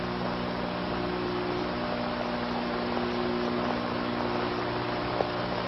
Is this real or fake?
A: real